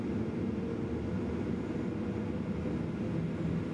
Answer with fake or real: real